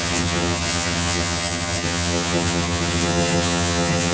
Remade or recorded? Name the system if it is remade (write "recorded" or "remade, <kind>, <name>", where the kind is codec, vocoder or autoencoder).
remade, vocoder, HiFi-GAN